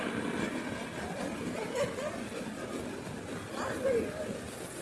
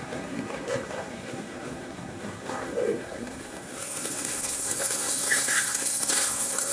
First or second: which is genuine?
first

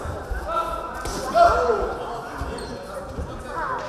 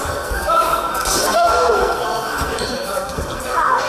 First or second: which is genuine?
first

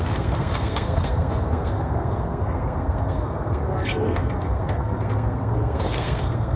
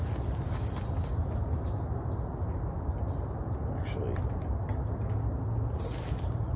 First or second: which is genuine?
second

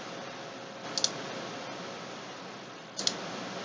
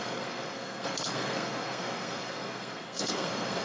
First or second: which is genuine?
first